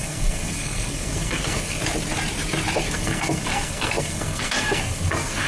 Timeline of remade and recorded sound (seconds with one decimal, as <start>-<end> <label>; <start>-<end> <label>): 0.0-1.8 remade; 1.8-2.8 recorded; 2.8-5.5 remade